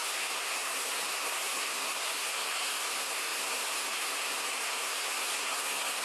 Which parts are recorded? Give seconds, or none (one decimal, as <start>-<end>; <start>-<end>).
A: none